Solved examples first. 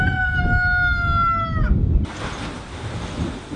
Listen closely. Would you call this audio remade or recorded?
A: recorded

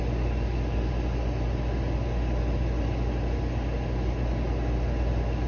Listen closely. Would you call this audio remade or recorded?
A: recorded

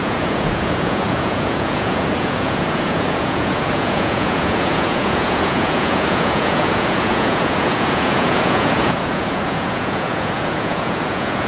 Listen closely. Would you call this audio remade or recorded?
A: remade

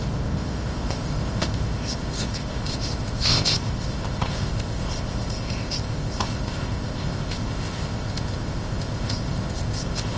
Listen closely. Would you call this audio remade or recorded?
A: remade